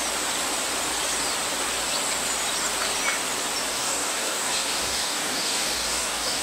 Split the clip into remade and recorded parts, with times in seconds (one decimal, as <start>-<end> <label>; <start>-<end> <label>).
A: 0.0-3.7 recorded; 3.7-6.4 remade